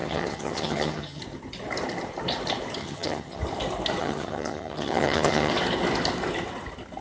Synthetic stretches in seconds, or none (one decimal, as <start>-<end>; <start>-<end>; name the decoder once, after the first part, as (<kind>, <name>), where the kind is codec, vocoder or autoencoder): 0.0-1.2 (vocoder, HiFi-GAN); 2.8-3.4; 4.0-5.5